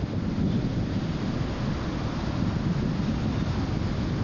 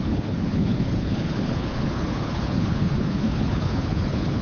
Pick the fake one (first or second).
second